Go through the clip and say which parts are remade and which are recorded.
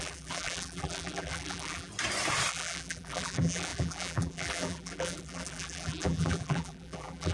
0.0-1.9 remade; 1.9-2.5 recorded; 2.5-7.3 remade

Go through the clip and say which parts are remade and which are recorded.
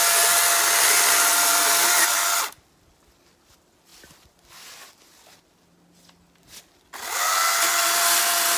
0.0-1.3 recorded; 1.3-2.4 remade; 2.4-8.6 recorded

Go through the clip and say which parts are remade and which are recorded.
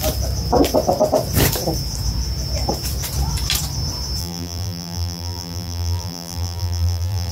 0.0-4.2 recorded; 4.2-7.3 remade